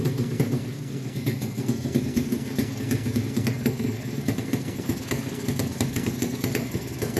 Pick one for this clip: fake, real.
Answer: fake